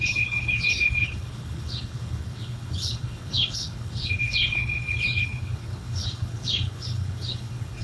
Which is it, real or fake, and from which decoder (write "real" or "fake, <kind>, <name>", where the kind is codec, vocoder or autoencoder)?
fake, codec, HILCodec